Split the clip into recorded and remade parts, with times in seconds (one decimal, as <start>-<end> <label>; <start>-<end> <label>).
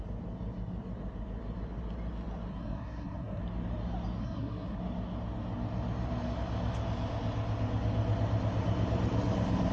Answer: 0.0-2.5 recorded; 2.5-3.4 remade; 3.4-4.2 recorded; 4.2-4.8 remade; 4.8-9.7 recorded